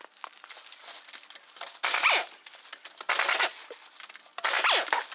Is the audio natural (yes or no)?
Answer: yes